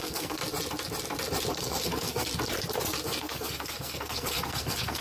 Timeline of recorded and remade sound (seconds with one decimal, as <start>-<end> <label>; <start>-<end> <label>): 0.0-0.4 remade; 0.4-1.5 recorded; 1.5-2.3 remade; 2.3-3.2 recorded; 3.2-5.0 remade